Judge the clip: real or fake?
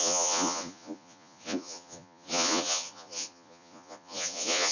fake